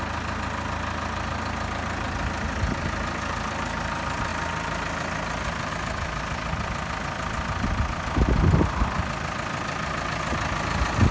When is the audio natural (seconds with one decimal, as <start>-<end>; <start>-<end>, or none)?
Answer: 0.0-11.1